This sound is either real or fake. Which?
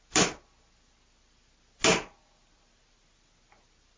real